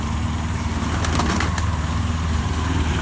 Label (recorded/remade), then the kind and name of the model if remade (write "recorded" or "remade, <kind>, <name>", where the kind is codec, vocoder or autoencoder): recorded